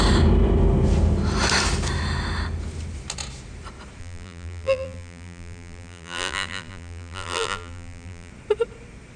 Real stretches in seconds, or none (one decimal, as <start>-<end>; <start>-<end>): 0.0-4.0; 8.3-9.2